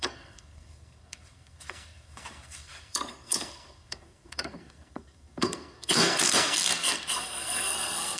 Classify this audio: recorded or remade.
remade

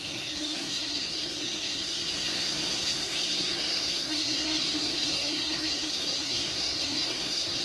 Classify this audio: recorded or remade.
remade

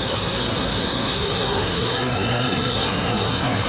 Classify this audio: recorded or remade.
remade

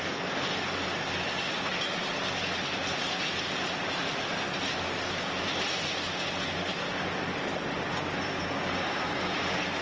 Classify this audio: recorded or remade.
recorded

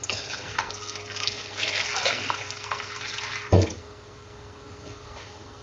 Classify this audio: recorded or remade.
remade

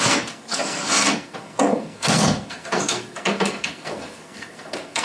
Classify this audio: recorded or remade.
remade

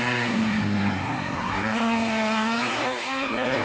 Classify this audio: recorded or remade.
remade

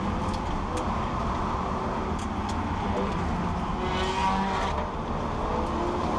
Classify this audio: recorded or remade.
recorded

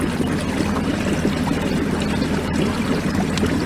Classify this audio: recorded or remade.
recorded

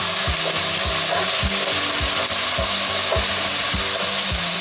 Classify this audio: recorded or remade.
recorded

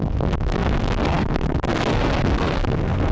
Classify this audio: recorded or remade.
remade